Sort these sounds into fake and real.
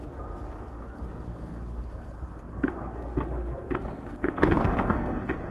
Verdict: fake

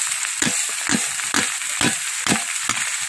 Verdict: real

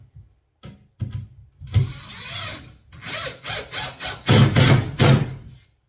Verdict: real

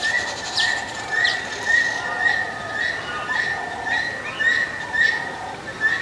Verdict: real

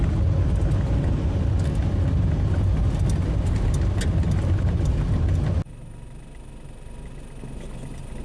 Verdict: real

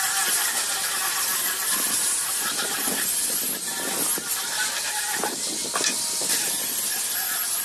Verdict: real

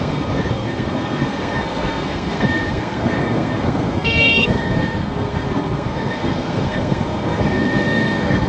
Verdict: fake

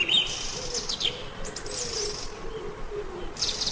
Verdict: real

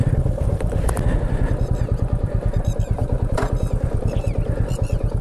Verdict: fake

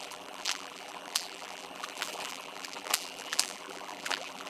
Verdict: fake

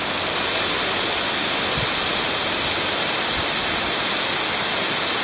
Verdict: real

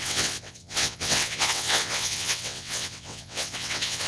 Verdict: fake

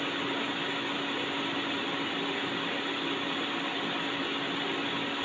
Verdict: real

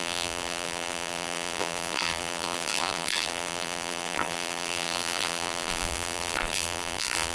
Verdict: fake